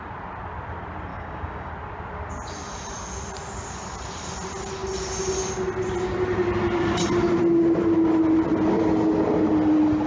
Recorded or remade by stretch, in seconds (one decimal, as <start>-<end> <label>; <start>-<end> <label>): 0.0-1.1 recorded; 1.1-1.7 remade; 1.7-10.1 recorded